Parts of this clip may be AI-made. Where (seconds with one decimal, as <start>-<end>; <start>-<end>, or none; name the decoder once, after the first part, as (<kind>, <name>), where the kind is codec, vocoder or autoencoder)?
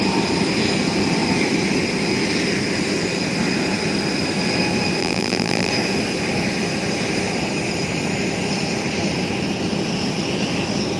5.0-5.7 (vocoder, BigVGAN v2)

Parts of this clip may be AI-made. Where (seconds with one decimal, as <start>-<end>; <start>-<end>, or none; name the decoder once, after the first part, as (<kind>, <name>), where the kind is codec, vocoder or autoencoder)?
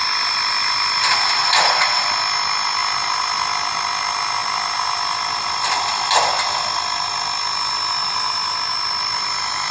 1.4-2.0 (vocoder, Vocos)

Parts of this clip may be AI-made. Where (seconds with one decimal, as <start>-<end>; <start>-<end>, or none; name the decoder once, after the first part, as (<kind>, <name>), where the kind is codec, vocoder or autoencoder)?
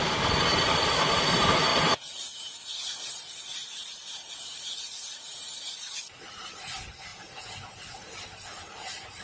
0.0-7.1 (vocoder, BigVGAN v2); 7.7-9.2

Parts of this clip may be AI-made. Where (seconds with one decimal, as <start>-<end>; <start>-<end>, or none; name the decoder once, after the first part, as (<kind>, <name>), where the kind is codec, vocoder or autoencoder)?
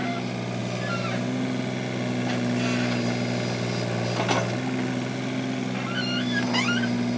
none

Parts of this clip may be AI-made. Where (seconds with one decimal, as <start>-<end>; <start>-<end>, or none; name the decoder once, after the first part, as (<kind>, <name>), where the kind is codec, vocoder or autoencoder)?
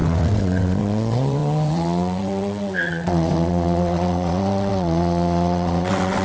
0.0-6.2 (vocoder, WaveNeXt)